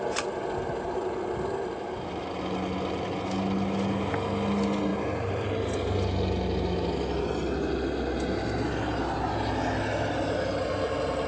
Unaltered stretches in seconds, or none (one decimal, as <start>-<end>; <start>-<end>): 0.0-4.9; 5.5-11.3